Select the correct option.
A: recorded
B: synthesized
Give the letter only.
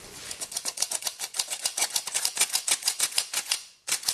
B